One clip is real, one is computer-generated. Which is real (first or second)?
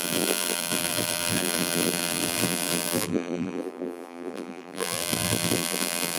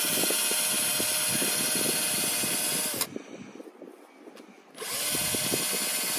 second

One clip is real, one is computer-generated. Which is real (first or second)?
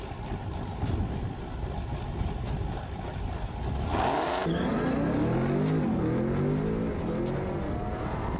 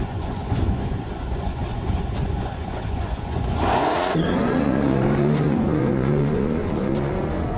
first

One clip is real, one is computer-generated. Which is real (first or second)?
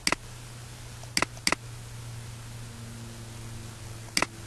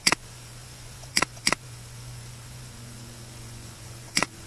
first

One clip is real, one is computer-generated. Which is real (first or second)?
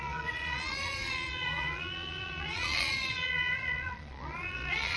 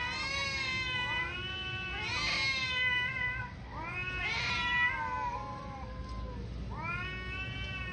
second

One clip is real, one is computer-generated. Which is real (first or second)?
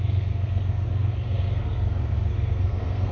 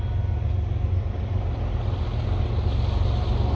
second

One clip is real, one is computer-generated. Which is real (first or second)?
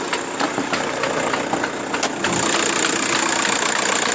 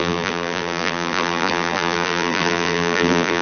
first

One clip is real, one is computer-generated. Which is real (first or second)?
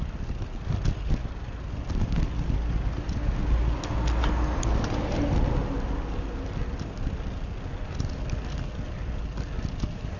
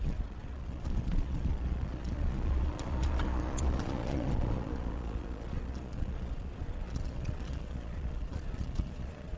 first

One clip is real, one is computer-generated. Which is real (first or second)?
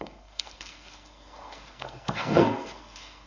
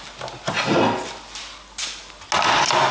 second